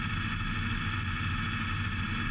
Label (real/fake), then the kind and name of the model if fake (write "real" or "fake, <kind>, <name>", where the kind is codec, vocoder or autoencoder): real